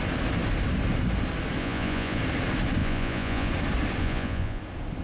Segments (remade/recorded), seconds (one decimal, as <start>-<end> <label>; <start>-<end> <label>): 0.0-1.6 recorded; 1.6-2.2 remade; 2.2-2.8 recorded; 2.8-3.5 remade; 3.5-4.0 recorded; 4.0-4.6 remade; 4.6-5.0 recorded